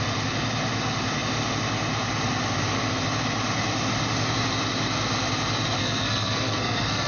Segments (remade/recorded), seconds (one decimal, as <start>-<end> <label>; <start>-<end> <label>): 0.0-5.8 recorded; 5.8-7.1 remade